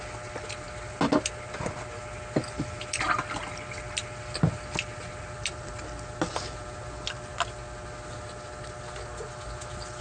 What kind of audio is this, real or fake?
real